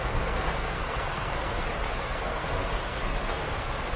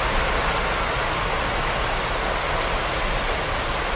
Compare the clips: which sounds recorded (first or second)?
second